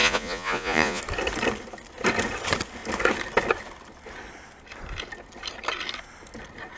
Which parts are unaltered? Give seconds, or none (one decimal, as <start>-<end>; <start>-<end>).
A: 1.0-6.8